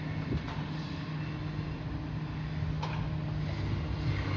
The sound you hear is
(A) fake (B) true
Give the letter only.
B